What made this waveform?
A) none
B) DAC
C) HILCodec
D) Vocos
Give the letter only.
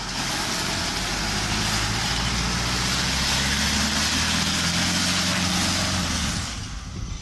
A